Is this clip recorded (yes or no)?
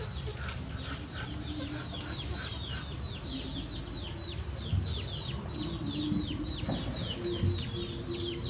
yes